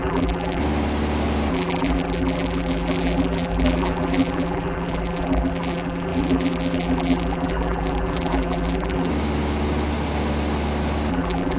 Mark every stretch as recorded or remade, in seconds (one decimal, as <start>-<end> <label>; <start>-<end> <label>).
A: 0.0-0.6 remade; 0.6-1.5 recorded; 1.5-9.1 remade; 9.1-11.1 recorded; 11.1-11.6 remade